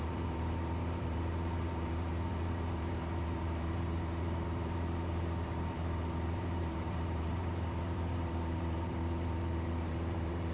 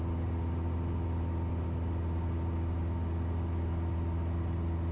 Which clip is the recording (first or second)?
second